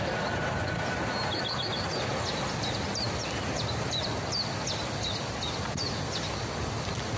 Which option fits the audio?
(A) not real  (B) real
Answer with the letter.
B